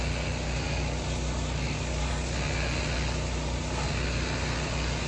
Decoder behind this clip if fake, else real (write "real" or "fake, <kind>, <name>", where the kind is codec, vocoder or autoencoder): real